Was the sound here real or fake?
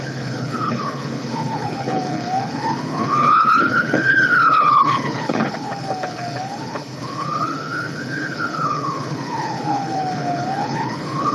fake